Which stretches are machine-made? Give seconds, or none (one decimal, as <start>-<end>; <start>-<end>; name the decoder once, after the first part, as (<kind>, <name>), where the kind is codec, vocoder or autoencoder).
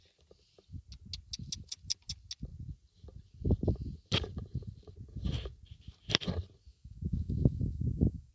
6.7-8.3 (autoencoder, DAC-VAE)